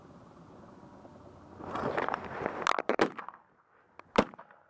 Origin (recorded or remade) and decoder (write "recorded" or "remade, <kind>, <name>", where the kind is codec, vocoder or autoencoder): recorded